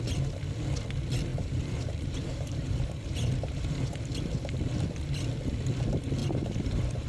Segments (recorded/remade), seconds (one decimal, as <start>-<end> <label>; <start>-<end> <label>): 0.0-1.3 recorded; 1.3-4.0 remade; 4.0-6.2 recorded; 6.2-7.1 remade